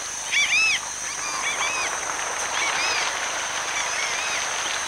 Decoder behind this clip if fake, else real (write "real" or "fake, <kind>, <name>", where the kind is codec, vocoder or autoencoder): real